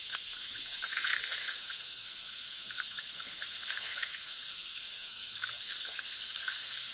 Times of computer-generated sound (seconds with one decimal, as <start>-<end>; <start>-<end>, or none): 0.0-6.9